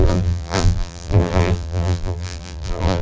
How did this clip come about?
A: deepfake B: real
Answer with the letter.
A